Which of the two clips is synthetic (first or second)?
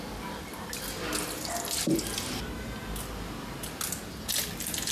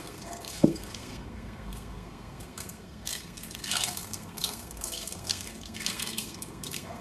second